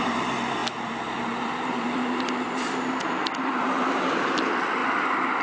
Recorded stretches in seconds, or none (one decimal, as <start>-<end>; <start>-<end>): 4.8-5.4